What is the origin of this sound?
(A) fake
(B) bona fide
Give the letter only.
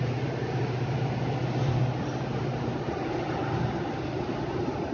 B